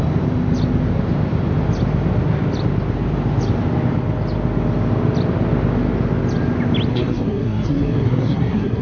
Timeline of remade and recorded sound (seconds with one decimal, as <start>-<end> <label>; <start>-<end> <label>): 0.0-6.9 recorded; 6.9-8.8 remade